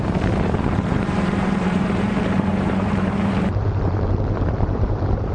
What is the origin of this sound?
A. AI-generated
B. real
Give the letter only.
A